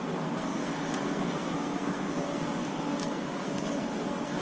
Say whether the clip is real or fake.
fake